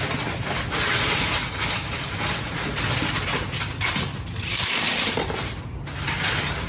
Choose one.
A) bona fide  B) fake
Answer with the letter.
A